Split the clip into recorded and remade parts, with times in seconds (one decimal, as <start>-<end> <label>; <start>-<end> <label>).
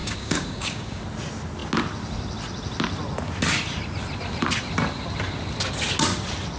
0.0-1.0 remade; 1.0-6.6 recorded